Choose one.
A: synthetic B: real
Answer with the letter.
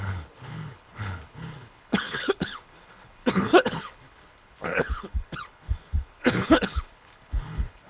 A